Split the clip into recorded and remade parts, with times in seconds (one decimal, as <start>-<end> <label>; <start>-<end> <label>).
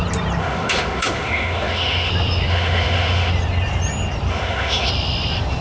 0.0-0.4 recorded; 0.4-2.1 remade; 2.1-2.5 recorded; 2.5-3.3 remade; 3.3-4.3 recorded; 4.3-4.9 remade; 4.9-5.6 recorded